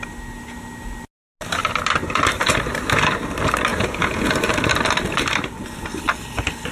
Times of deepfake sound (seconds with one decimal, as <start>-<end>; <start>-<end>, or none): 3.7-4.3